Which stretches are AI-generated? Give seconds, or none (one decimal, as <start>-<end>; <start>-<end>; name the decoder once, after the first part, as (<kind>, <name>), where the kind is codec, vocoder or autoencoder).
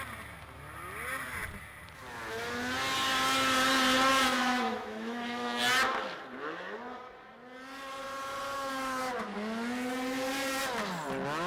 4.3-5.6 (autoencoder, DAC-VAE)